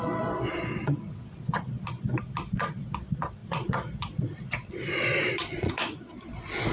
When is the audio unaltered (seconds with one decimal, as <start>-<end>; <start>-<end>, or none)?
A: none